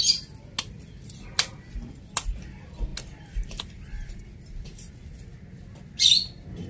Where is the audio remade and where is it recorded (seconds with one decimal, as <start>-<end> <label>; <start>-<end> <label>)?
0.0-6.7 recorded